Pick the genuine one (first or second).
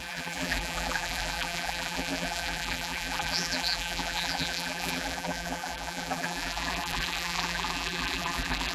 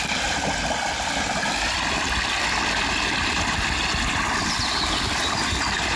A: second